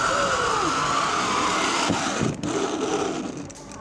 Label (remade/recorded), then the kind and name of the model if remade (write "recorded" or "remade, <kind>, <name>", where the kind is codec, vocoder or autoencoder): recorded